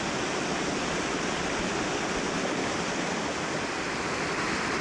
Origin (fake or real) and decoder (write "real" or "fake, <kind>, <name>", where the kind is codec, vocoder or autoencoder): real